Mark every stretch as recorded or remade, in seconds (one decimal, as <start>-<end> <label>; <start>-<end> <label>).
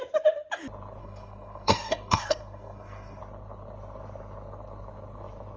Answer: 0.0-1.0 recorded; 1.0-3.2 remade; 3.2-5.6 recorded